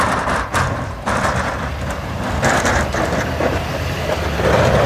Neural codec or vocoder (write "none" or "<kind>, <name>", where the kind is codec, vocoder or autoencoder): vocoder, BigVGAN v2